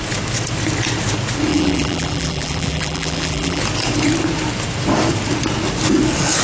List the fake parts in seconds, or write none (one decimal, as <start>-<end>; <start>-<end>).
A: 1.5-3.6